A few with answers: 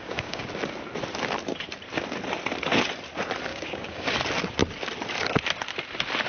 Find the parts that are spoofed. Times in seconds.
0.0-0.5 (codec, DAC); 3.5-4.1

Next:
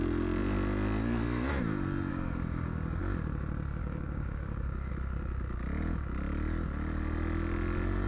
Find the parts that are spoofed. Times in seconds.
2.1-3.0 (codec, DAC); 3.8-4.9

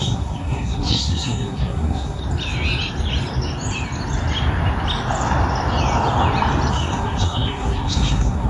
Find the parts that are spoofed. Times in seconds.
0.0-2.2 (codec, SNAC); 6.7-8.5

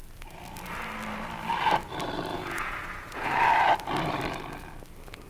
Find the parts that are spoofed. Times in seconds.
2.3-3.4 (vocoder, Vocos)

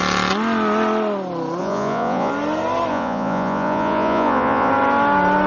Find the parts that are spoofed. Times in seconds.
1.6-2.3 (vocoder, Vocos); 2.9-4.7

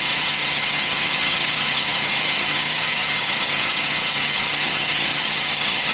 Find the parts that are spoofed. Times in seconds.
0.0-5.9 (vocoder, HiFi-GAN)

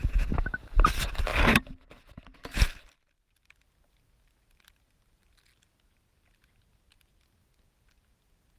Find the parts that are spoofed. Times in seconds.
none

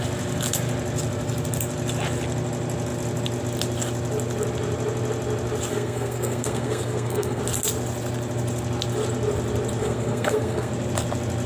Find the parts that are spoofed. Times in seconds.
5.7-7.4 (codec, SNAC); 9.8-10.7